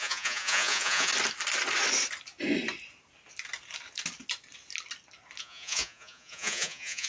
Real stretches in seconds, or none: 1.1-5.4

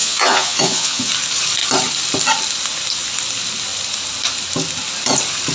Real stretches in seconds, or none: 1.1-5.5

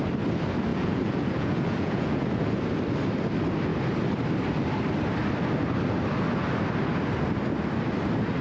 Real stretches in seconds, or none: 0.0-0.7; 2.5-8.4

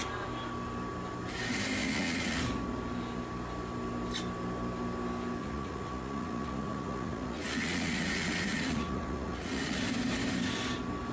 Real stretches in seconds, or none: 0.0-1.8; 2.4-5.4; 9.8-11.1

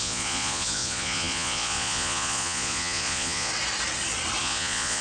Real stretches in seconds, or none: 3.5-4.4

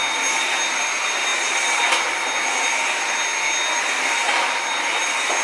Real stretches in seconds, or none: 0.0-5.4